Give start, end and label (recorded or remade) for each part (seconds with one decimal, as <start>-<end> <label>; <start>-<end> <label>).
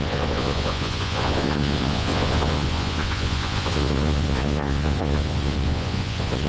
0.0-6.5 remade